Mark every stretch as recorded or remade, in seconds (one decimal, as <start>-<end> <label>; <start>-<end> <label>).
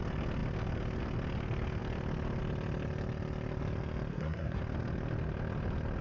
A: 0.0-4.1 recorded; 4.1-4.6 remade; 4.6-6.0 recorded